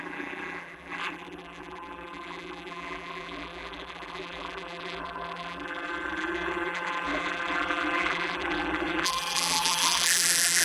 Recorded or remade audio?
remade